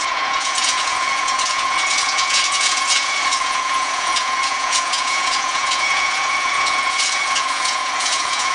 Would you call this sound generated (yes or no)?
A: yes